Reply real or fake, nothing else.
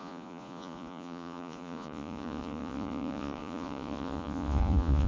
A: fake